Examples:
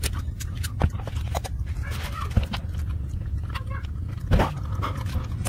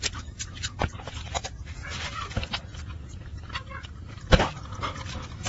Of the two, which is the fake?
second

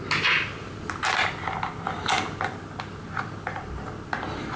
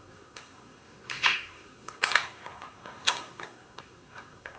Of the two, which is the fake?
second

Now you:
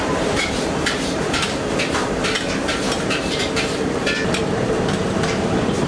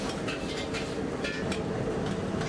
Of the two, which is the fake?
first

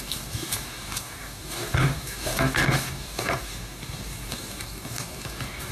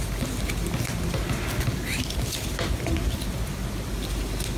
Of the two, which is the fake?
first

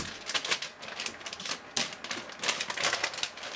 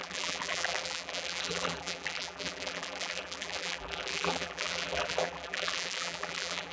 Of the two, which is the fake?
second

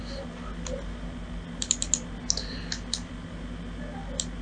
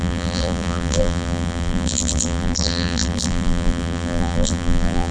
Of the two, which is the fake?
second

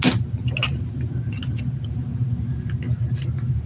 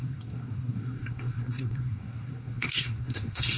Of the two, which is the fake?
second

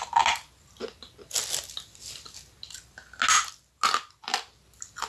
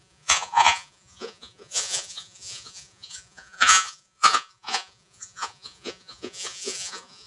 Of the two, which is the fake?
second